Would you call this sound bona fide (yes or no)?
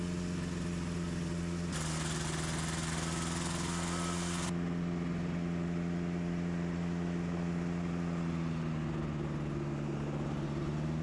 yes